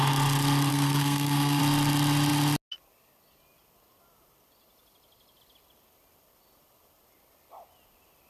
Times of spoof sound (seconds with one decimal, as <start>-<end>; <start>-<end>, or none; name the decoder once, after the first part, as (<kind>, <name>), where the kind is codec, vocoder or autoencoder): 0.7-1.6 (codec, SNAC)